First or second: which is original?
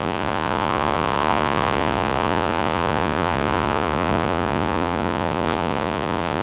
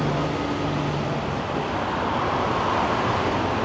second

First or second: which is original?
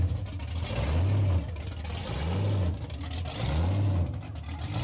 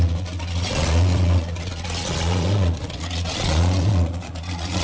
first